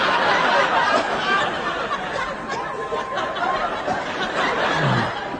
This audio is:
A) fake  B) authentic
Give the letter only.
B